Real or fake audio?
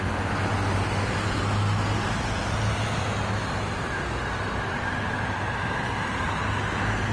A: real